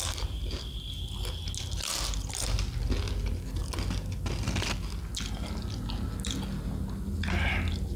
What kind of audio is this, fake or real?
real